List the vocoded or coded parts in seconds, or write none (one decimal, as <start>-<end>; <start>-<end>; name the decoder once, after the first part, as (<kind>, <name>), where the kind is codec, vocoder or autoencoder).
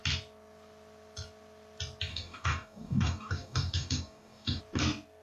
2.1-4.6 (codec, DAC)